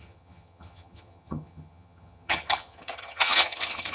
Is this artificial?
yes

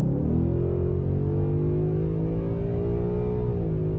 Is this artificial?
no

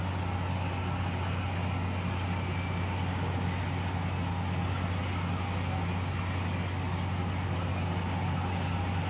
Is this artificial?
no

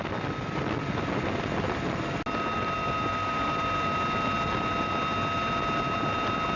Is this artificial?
no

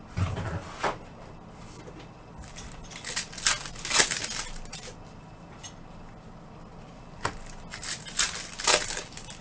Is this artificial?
no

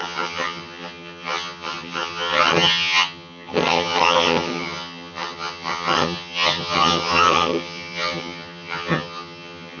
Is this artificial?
yes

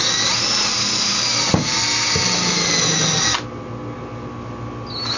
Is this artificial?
no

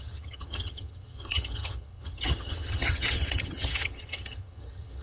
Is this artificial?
yes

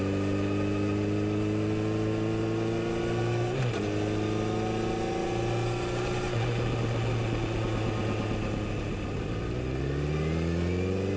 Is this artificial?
no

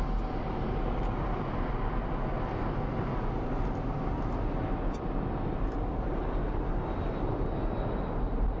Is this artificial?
no